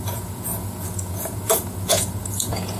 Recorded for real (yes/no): no